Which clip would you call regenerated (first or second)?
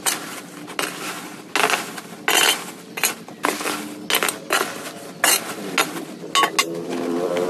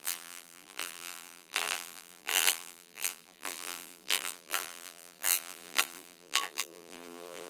second